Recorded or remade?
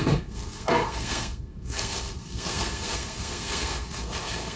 remade